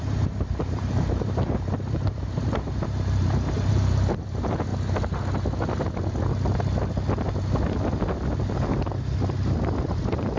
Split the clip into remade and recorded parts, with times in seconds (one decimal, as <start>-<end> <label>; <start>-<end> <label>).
0.0-4.7 remade; 4.7-9.9 recorded; 9.9-10.4 remade